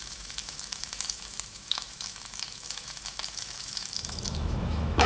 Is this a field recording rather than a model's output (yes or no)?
no